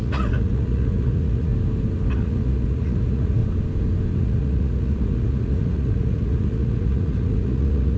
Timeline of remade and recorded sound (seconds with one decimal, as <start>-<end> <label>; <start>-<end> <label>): 0.0-1.5 remade; 1.5-2.1 recorded; 2.1-3.4 remade; 3.4-4.2 recorded; 4.2-8.0 remade